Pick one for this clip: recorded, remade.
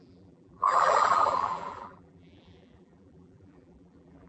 remade